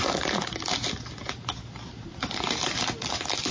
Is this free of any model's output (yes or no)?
yes